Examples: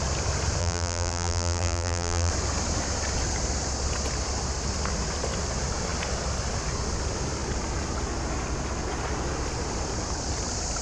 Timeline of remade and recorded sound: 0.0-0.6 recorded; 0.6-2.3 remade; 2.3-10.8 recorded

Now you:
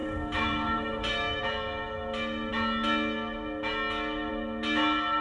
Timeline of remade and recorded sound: 0.0-1.4 remade; 1.4-5.2 recorded

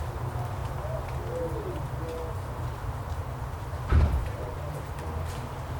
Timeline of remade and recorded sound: 0.0-4.2 recorded; 4.2-5.3 remade; 5.3-5.8 recorded

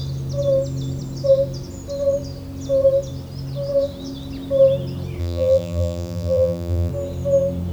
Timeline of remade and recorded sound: 0.0-5.2 recorded; 5.2-6.9 remade; 6.9-7.7 recorded

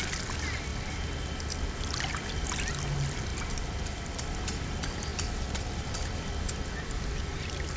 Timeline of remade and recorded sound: 0.0-3.3 recorded; 3.3-4.2 remade; 4.2-5.1 recorded; 5.1-6.2 remade; 6.2-7.8 recorded